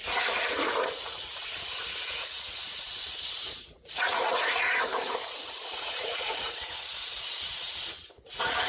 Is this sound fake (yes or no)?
yes